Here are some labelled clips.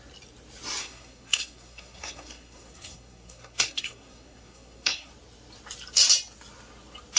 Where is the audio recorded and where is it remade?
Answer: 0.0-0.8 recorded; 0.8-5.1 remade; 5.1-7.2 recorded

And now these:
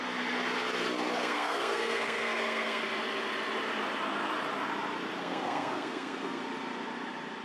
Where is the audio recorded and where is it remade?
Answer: 0.0-1.2 recorded; 1.2-2.8 remade; 2.8-5.2 recorded; 5.2-6.4 remade; 6.4-7.4 recorded